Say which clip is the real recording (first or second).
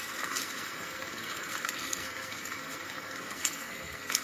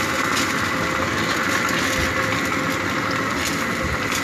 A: second